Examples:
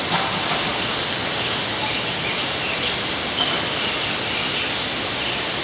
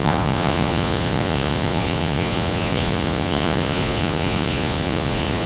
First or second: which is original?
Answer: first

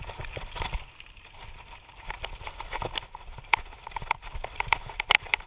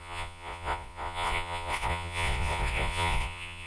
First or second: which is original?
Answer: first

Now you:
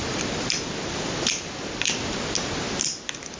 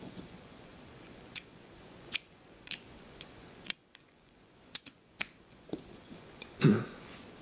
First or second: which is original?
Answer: first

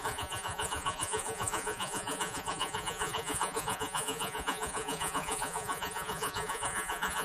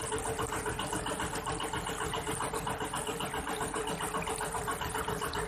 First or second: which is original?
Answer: second